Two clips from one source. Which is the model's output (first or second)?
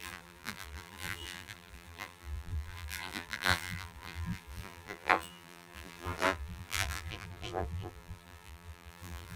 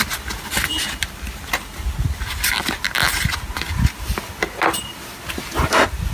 first